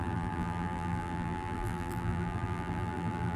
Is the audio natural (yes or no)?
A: no